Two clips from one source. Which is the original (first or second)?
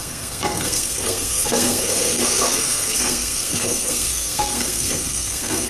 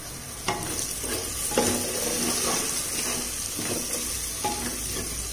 second